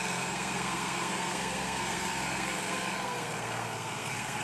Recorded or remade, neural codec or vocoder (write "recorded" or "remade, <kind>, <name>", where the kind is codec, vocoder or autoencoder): remade, codec, SNAC